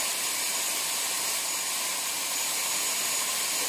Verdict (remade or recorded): remade